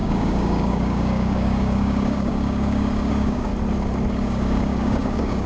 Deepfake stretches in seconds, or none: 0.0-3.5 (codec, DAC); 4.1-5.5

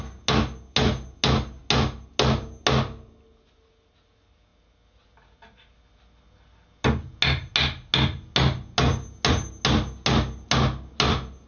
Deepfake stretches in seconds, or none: none

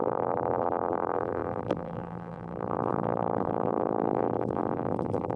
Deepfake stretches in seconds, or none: 0.0-5.4 (vocoder, BigVGAN v2)

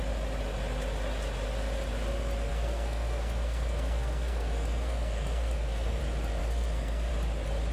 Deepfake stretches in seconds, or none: 2.5-6.0 (codec, SNAC); 6.4-7.1

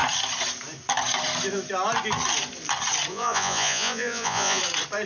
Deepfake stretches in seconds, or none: 3.1-4.6 (vocoder, Vocos)

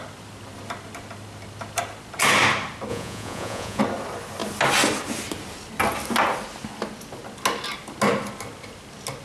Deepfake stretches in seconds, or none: 2.9-3.8 (vocoder, Vocos)

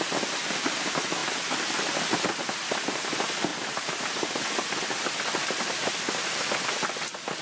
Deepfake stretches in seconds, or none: 3.5-4.4 (vocoder, BigVGAN v2)

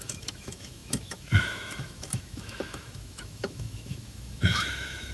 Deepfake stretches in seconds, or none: 0.0-5.1 (autoencoder, DAC-VAE)